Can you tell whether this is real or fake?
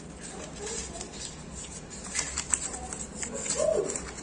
real